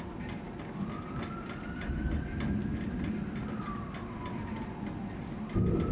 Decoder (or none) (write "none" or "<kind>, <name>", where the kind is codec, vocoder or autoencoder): none